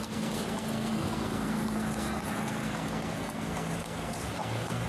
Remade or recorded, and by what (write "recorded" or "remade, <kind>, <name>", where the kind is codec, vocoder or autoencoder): remade, codec, SNAC